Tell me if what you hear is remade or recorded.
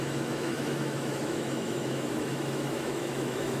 remade